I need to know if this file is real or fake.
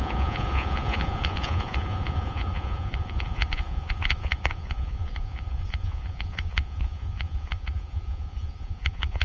fake